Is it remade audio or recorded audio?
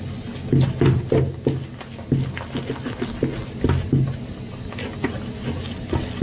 recorded